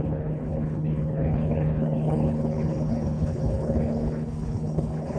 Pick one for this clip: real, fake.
fake